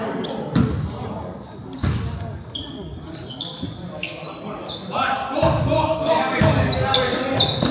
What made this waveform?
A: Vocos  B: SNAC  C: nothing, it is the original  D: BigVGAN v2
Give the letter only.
C